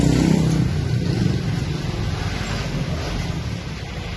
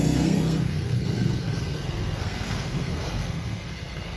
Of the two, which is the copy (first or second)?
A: second